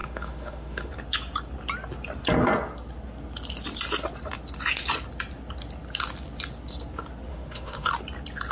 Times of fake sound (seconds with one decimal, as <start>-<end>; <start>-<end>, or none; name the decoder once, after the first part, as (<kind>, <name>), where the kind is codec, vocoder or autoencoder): 0.0-0.9 (autoencoder, DAC-VAE); 7.3-7.9